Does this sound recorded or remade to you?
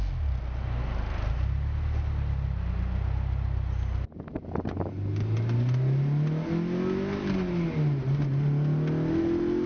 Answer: recorded